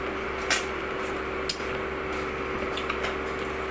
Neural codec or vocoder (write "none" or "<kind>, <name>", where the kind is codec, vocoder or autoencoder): none